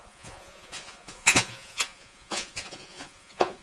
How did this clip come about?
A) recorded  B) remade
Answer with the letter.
B